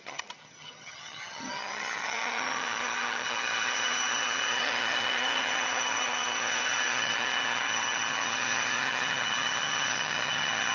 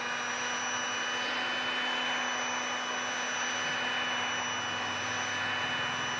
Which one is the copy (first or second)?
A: first